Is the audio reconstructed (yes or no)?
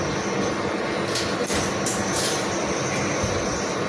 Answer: no